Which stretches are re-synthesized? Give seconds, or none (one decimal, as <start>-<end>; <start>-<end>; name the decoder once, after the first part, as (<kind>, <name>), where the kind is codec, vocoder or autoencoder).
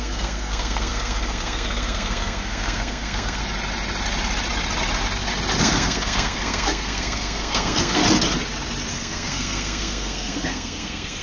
0.0-3.4 (codec, SNAC); 5.6-8.0; 8.9-11.2